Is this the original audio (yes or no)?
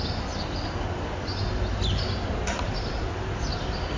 yes